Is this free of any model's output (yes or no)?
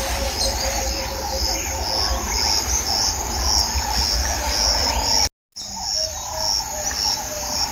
yes